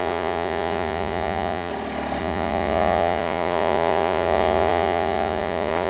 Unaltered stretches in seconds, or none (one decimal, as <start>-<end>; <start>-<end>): 1.7-2.2

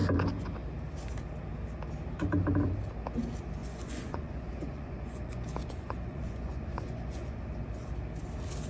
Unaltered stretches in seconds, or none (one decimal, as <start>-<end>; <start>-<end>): 0.0-3.6; 7.4-8.7

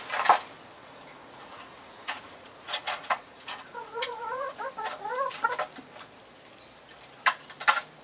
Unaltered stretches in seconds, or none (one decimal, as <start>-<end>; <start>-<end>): 0.0-0.8; 4.6-8.0

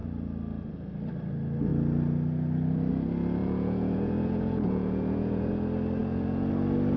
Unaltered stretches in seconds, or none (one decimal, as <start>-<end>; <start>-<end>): 0.0-3.4; 5.5-6.0; 6.5-7.0

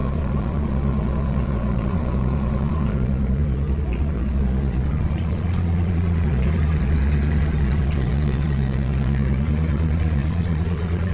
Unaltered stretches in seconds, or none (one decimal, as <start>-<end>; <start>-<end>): none

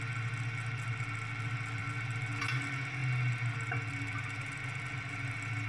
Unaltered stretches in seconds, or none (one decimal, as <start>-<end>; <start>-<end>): 0.0-5.7

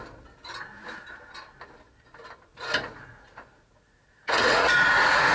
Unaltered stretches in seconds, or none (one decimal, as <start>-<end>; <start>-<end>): 0.0-2.5

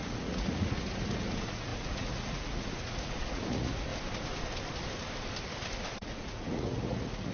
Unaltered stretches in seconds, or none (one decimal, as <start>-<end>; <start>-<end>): 3.9-5.9